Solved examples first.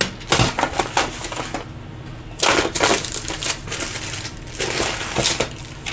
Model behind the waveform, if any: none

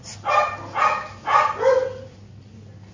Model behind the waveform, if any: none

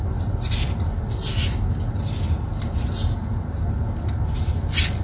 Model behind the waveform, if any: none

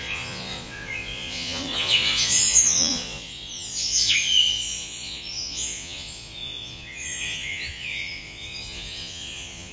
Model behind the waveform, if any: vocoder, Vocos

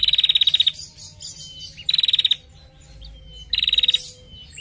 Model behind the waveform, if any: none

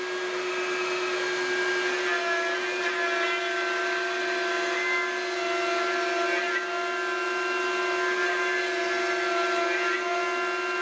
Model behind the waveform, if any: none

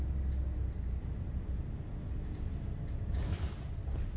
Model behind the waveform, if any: none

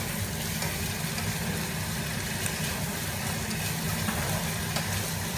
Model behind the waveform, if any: none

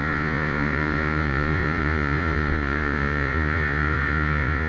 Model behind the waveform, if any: vocoder, Vocos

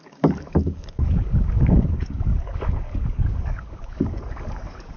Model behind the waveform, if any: codec, DAC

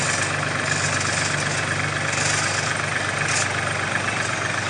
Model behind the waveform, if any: none